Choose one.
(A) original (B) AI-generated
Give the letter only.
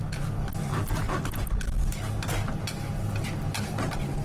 A